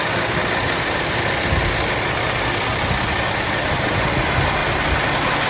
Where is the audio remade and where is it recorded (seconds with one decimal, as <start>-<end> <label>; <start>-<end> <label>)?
0.0-0.4 remade; 0.4-3.7 recorded; 3.7-4.6 remade; 4.6-5.5 recorded

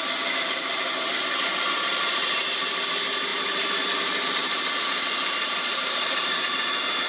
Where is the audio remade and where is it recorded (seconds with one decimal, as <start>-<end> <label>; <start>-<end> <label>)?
0.0-1.9 recorded; 1.9-2.4 remade; 2.4-3.3 recorded; 3.3-6.4 remade; 6.4-7.1 recorded

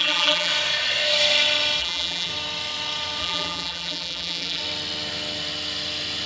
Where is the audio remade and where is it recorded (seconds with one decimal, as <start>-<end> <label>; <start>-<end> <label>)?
0.0-0.5 remade; 0.5-1.8 recorded; 1.8-2.3 remade; 2.3-3.2 recorded; 3.2-4.6 remade; 4.6-6.3 recorded